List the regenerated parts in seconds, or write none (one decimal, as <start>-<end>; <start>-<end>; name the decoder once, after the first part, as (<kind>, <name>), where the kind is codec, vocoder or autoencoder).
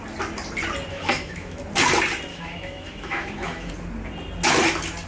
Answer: 0.9-1.6 (autoencoder, DAC-VAE); 2.3-3.7